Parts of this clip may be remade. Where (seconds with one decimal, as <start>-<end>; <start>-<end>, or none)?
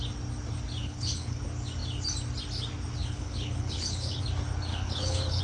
0.8-1.4; 3.0-4.2; 4.7-5.4